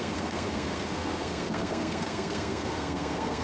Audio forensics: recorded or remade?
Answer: remade